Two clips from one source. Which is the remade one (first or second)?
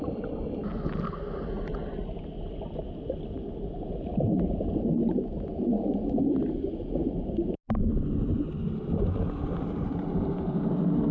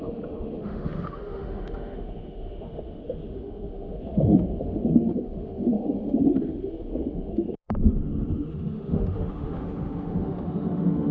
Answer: second